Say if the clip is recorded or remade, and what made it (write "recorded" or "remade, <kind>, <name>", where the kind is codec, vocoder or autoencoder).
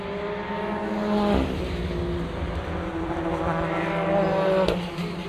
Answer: recorded